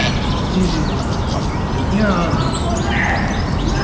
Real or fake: real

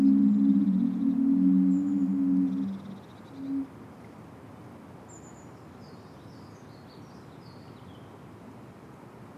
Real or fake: real